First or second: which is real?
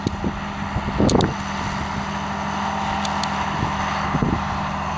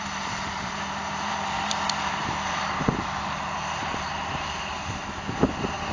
first